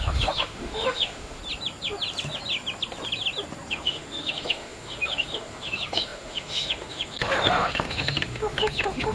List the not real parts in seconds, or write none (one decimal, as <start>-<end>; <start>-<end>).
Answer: 0.0-1.4; 3.7-9.1